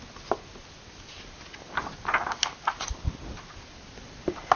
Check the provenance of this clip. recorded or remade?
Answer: recorded